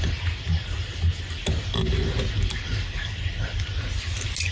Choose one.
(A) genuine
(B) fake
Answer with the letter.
A